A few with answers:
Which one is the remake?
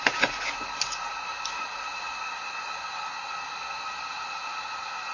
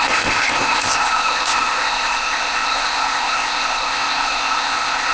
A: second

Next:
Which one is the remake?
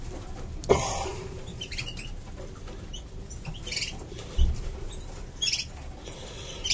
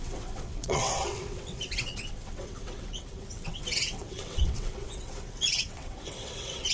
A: second